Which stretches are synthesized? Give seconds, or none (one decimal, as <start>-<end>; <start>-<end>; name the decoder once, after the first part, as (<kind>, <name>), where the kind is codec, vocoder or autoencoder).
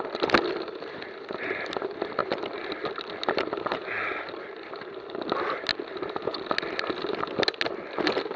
none